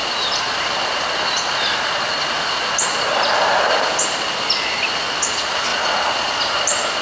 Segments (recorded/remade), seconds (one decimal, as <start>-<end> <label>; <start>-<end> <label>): 0.0-7.0 recorded